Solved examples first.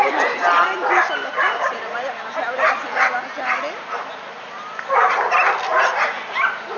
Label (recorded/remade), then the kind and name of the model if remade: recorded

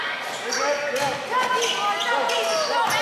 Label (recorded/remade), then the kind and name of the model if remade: recorded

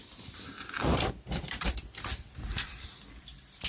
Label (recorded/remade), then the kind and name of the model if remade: remade, vocoder, BigVGAN v2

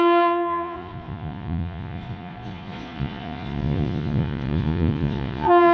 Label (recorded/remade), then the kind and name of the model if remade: remade, vocoder, Vocos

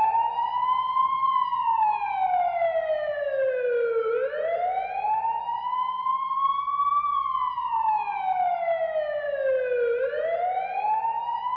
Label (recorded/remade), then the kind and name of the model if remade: recorded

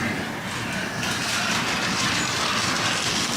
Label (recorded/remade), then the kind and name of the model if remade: recorded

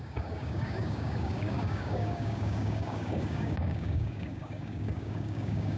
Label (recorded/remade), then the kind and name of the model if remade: remade, codec, DAC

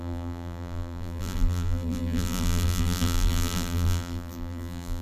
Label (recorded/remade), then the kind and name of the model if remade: remade, vocoder, BigVGAN v2